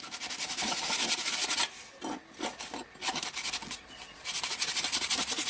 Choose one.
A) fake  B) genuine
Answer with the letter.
B